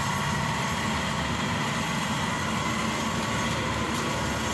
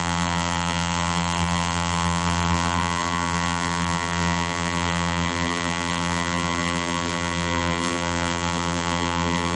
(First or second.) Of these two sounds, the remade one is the second